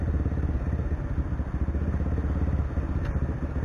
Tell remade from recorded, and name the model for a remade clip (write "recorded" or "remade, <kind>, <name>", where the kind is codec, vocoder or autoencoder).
recorded